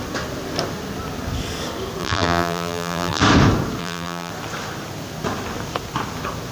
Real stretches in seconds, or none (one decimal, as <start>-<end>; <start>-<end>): 0.0-2.0; 3.2-3.8; 4.3-6.5